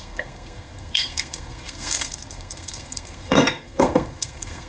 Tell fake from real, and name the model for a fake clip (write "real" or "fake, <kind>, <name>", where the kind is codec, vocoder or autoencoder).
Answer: fake, codec, SNAC